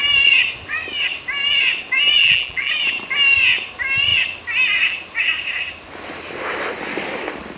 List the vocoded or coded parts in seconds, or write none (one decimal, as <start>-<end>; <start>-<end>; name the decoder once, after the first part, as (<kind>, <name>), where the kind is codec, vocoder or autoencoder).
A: 2.2-2.7 (vocoder, BigVGAN v2)